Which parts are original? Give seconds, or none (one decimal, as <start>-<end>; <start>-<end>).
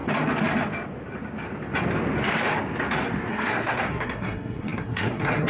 0.0-3.3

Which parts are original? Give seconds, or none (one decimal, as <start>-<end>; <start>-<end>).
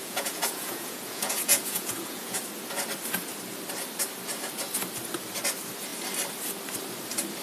2.4-7.4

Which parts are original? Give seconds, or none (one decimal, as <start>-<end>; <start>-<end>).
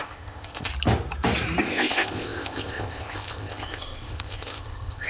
0.7-1.6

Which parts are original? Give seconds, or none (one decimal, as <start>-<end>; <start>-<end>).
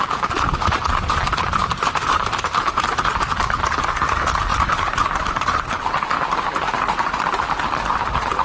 0.0-1.6; 2.6-4.5; 5.7-8.4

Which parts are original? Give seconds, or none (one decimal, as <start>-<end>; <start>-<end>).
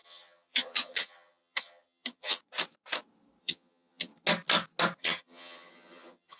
2.4-3.4; 4.1-5.0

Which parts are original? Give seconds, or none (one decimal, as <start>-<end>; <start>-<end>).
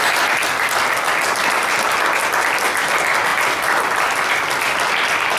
0.0-5.4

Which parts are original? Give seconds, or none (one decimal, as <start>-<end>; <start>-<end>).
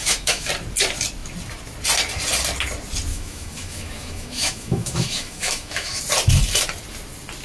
0.5-3.1; 6.0-7.4